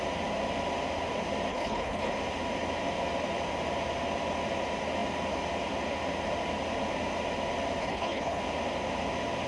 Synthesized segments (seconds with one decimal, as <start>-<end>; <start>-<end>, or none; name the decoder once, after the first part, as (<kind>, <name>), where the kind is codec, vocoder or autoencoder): 1.5-2.1 (codec, HILCodec); 7.8-8.4